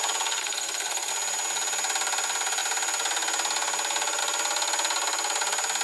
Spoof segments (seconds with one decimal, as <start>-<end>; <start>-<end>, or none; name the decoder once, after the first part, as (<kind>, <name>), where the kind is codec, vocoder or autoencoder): 0.4-1.1 (codec, SNAC)

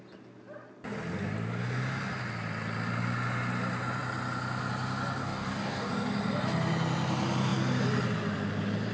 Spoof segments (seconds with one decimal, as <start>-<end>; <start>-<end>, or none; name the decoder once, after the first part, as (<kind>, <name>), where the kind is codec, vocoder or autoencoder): 5.2-5.9 (codec, DAC)

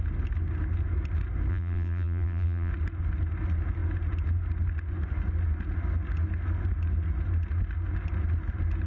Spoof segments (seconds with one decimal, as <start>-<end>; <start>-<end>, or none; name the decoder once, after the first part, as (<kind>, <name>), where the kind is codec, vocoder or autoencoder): 1.5-2.7 (vocoder, BigVGAN v2)

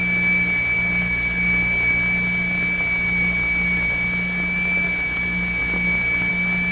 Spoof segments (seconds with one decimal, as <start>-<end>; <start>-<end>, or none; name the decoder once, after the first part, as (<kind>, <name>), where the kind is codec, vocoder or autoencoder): none